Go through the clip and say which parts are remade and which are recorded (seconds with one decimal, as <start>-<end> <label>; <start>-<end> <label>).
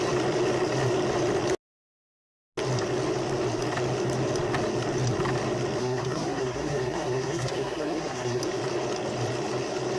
0.0-5.8 recorded; 5.8-8.4 remade; 8.4-10.0 recorded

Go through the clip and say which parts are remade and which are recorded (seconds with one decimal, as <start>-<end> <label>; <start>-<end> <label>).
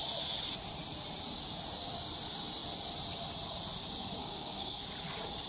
0.0-4.2 recorded; 4.2-4.8 remade; 4.8-5.5 recorded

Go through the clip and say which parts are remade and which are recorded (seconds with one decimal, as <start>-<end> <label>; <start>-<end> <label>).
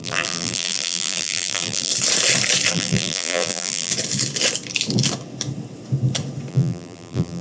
0.0-1.9 remade; 1.9-2.7 recorded; 2.7-3.9 remade; 3.9-6.5 recorded; 6.5-7.4 remade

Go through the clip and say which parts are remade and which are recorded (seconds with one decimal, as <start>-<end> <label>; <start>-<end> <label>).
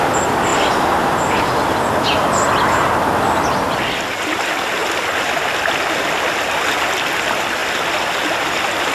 0.0-8.9 recorded